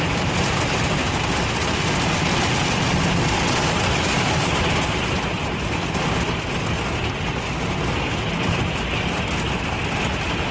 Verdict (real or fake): real